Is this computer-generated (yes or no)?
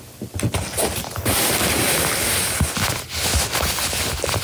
no